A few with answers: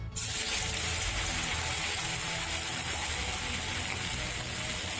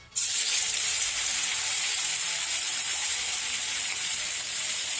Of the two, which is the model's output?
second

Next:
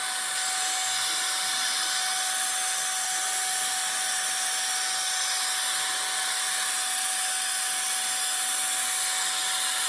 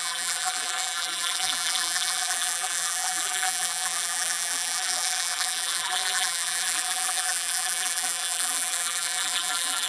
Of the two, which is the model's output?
second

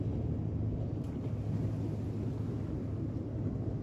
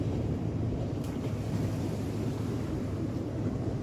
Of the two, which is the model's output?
second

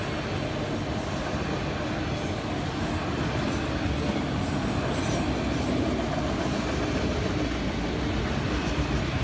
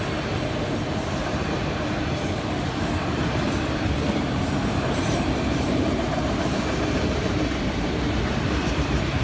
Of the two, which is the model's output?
second